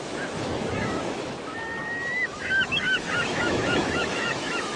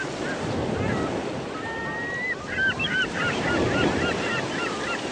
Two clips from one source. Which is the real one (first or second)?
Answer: second